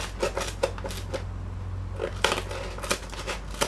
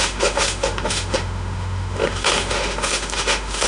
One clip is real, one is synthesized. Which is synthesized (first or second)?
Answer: second